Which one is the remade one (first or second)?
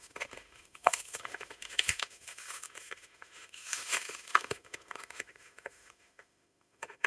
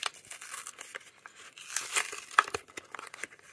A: first